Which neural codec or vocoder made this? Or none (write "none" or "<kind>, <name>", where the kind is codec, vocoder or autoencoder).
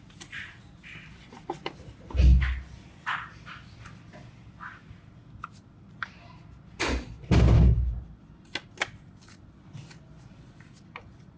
none